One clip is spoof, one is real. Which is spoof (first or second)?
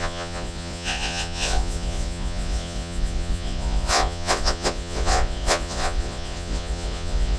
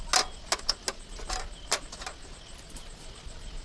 first